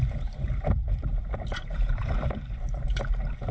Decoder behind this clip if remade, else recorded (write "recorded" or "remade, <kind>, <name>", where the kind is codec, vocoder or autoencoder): remade, vocoder, BigVGAN v2